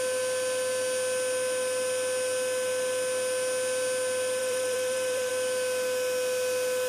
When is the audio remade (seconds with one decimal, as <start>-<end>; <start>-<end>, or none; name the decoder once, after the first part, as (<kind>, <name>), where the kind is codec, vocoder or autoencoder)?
4.4-5.3 (vocoder, BigVGAN v2)